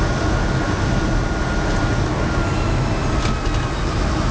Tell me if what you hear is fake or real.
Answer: real